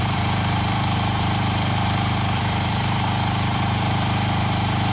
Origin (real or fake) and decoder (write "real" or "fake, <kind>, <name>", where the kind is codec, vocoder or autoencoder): fake, vocoder, BigVGAN v2